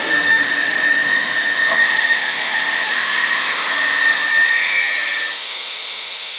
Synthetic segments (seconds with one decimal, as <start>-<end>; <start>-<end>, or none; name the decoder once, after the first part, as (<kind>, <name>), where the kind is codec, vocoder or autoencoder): 0.0-6.4 (autoencoder, DAC-VAE)